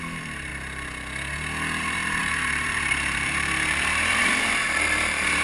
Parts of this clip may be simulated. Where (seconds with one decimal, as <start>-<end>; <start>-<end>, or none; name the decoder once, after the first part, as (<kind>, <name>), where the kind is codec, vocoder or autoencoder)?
0.0-0.5 (vocoder, BigVGAN v2); 1.8-5.4